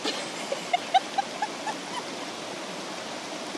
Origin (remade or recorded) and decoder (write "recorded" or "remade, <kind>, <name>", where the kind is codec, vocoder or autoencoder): recorded